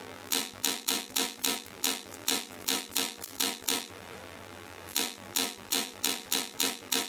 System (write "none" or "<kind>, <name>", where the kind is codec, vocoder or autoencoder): vocoder, BigVGAN v2